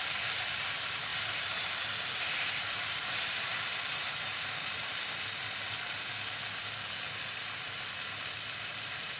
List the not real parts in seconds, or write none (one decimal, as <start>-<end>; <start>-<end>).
0.0-5.4; 8.7-9.2